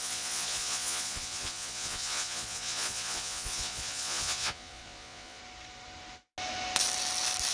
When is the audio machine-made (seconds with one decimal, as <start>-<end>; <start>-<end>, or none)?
0.0-5.4